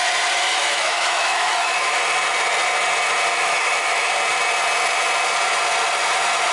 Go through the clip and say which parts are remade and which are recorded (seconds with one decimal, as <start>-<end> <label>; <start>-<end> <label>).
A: 0.0-0.5 recorded; 0.5-2.0 remade; 2.0-3.3 recorded; 3.3-4.1 remade; 4.1-6.5 recorded